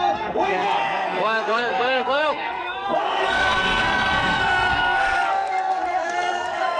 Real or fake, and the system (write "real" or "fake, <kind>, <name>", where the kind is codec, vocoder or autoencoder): fake, codec, SNAC